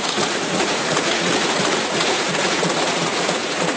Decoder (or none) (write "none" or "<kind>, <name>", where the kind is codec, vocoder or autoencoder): vocoder, Vocos